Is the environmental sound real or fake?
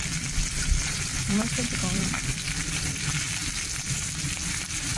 fake